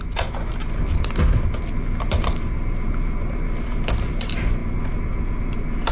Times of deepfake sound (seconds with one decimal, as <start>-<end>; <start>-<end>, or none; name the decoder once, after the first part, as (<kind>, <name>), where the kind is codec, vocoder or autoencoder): 0.0-5.9 (vocoder, BigVGAN v2)